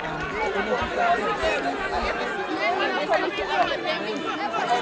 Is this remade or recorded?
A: recorded